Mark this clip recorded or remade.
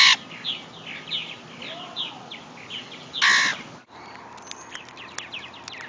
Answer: recorded